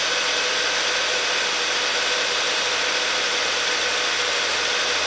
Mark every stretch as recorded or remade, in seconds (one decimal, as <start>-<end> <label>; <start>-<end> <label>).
0.0-5.1 recorded